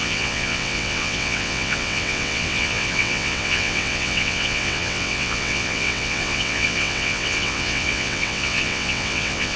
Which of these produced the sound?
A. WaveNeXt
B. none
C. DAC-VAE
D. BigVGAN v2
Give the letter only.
A